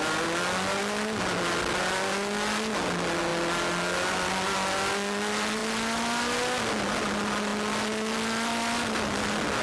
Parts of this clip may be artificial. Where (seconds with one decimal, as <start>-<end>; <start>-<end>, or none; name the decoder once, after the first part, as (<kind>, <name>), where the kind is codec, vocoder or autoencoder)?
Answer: none